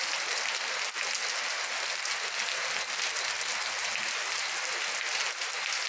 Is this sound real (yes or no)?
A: yes